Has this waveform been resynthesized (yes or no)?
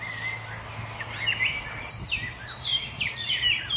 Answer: no